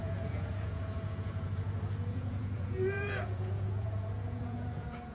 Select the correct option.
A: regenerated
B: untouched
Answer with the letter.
A